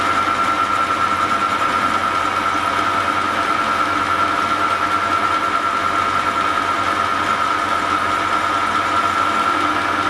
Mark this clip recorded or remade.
recorded